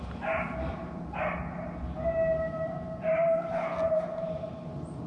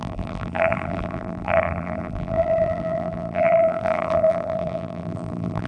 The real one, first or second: first